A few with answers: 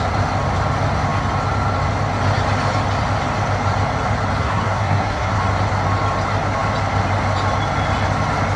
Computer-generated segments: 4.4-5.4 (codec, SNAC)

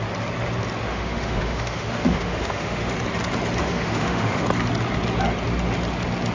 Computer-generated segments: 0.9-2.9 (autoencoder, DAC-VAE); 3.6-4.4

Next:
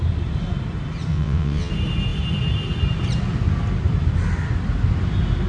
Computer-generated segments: 1.1-1.7 (vocoder, WaveNeXt)